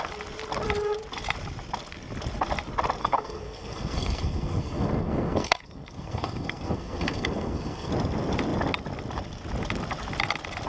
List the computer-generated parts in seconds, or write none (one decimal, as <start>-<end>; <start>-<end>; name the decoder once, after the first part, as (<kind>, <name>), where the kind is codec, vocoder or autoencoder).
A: 3.0-7.9 (codec, SNAC)